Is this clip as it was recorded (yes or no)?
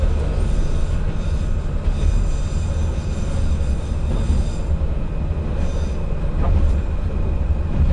yes